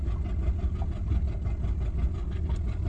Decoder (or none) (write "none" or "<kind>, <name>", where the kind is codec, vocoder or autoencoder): none